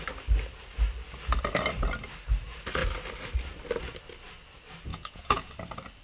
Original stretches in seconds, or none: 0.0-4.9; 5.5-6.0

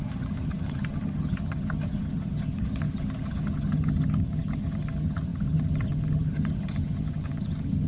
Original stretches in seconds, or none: none

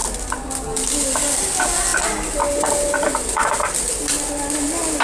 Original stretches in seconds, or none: 0.0-5.0

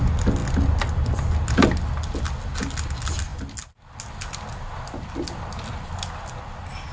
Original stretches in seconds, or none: 0.0-6.9

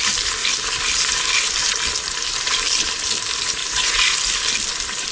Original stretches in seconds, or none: 0.0-3.6; 4.2-5.1

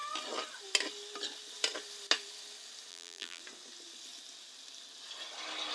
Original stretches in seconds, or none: 0.0-2.9; 3.4-5.7

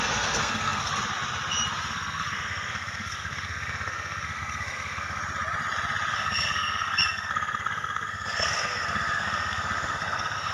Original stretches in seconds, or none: 0.9-1.9; 5.2-6.1

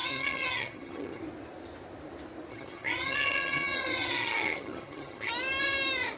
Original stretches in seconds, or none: 1.2-2.5; 5.3-6.2